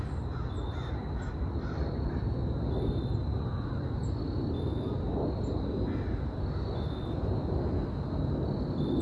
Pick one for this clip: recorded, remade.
recorded